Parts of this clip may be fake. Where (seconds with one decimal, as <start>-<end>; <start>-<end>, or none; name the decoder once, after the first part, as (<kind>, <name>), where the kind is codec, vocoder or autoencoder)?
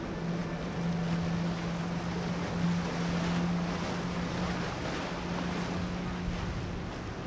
none